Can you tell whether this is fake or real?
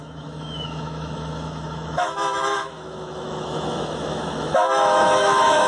fake